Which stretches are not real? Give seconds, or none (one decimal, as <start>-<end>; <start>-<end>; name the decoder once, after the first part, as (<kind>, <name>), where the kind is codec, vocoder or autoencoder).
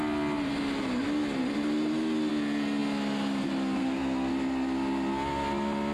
3.8-4.3 (codec, SNAC)